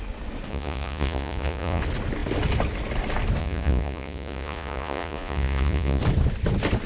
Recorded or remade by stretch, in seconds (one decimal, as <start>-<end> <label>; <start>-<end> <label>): 0.0-0.5 recorded; 0.5-1.8 remade; 1.8-3.4 recorded; 3.4-6.0 remade; 6.0-6.9 recorded